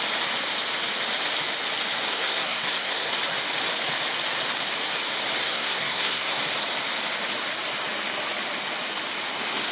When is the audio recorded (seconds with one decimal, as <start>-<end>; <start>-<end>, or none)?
0.0-2.1; 3.1-5.4; 6.4-9.7